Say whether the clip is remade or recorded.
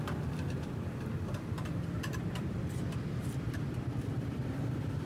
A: remade